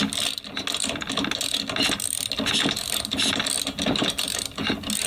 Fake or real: real